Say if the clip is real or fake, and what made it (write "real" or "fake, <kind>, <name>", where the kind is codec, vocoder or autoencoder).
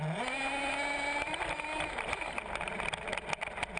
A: real